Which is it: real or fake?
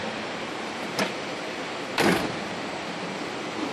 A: fake